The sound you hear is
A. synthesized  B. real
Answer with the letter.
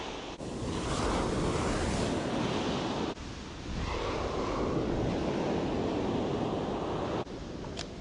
B